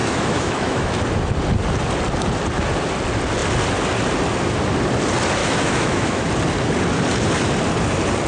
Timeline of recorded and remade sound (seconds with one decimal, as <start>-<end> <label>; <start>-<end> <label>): 0.0-1.0 remade; 1.0-5.4 recorded; 5.4-6.3 remade; 6.3-8.3 recorded